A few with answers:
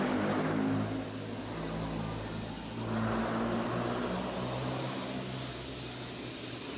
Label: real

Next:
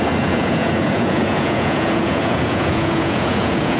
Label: fake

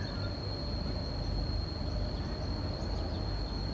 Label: real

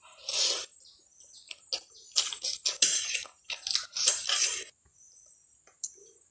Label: real